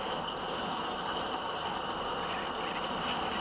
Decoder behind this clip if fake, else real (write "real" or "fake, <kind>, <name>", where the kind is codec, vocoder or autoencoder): real